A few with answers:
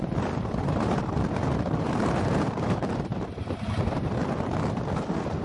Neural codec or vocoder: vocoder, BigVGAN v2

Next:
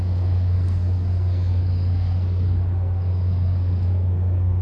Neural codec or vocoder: codec, SNAC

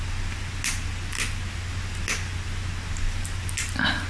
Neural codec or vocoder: none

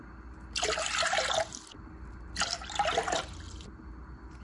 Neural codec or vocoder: none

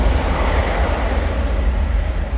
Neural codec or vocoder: none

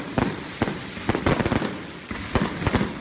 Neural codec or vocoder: none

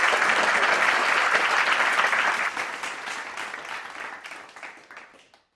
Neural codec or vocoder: none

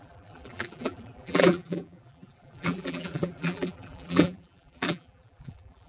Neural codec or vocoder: vocoder, BigVGAN v2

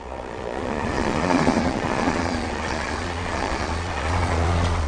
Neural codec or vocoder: vocoder, Vocos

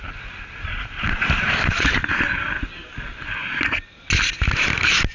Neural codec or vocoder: none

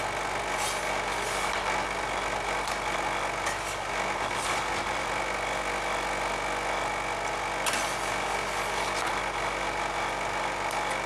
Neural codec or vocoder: none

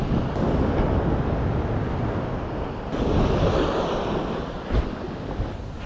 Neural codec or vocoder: none